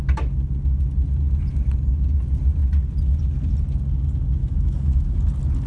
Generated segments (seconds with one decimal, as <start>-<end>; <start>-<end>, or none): 4.4-5.2